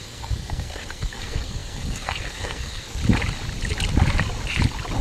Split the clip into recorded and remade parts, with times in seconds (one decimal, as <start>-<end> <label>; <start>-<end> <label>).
0.0-3.0 remade; 3.0-5.0 recorded